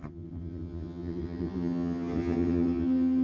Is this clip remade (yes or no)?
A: yes